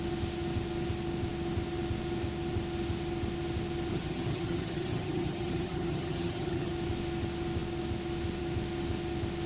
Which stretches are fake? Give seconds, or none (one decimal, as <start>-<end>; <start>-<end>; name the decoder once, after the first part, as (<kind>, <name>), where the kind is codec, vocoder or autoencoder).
3.9-6.7 (vocoder, HiFi-GAN)